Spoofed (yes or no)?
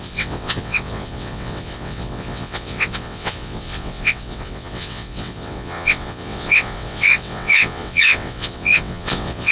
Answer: yes